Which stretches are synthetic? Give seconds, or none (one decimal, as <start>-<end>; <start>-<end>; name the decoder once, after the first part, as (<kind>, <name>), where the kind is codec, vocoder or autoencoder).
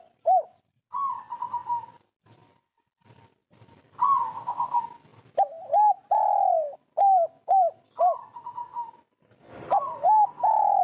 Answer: 4.2-4.8 (codec, DAC)